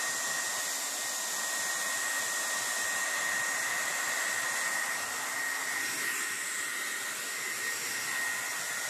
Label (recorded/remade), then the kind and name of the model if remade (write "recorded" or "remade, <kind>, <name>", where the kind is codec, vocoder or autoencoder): recorded